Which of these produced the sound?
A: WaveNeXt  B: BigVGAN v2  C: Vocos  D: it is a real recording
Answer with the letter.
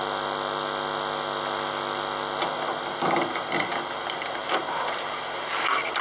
B